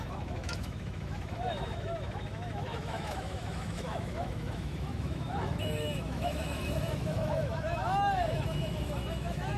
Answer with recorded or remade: remade